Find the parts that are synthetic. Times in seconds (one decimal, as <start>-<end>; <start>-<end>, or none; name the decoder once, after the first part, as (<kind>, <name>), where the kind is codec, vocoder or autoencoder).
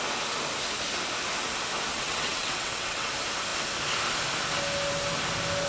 1.9-3.1 (vocoder, WaveNeXt)